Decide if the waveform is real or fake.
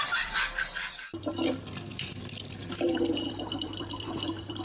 fake